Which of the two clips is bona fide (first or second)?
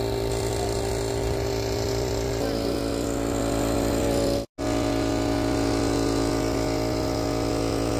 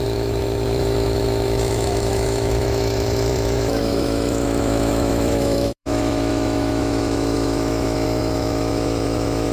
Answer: first